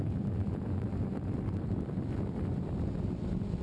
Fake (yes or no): no